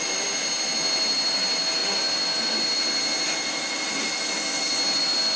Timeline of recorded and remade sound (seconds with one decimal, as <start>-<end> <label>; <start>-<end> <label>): 0.0-5.4 recorded